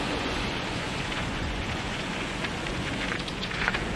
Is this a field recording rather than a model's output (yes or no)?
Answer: no